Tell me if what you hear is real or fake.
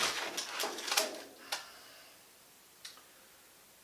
real